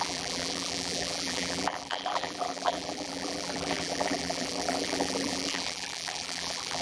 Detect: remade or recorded remade